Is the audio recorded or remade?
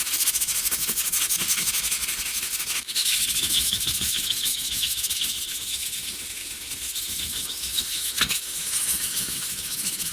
remade